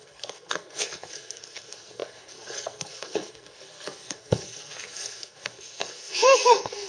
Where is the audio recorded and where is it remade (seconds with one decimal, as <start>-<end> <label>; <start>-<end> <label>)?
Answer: 0.0-6.9 remade